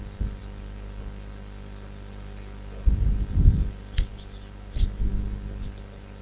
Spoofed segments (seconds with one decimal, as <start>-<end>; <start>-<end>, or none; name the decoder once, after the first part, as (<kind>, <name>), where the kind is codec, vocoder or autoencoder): none